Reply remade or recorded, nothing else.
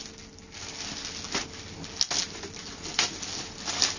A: recorded